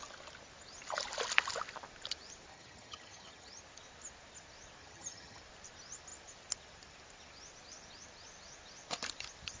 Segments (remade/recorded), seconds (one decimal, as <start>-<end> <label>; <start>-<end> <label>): 0.0-2.5 recorded; 2.5-3.6 remade; 3.6-4.8 recorded; 4.8-5.4 remade; 5.4-9.6 recorded